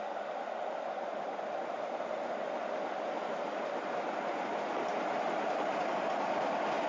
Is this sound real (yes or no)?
yes